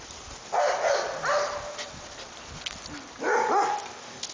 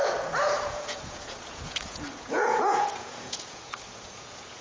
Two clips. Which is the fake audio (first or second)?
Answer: second